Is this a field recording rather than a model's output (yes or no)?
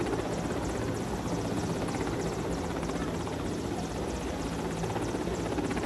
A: yes